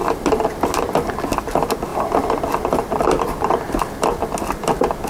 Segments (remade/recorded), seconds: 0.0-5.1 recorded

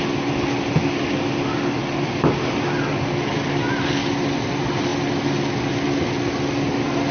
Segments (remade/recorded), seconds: 0.0-7.1 recorded